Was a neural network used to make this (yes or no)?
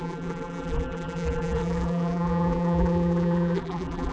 yes